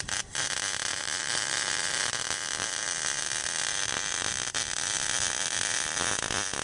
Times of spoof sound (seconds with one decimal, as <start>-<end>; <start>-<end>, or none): 0.9-2.1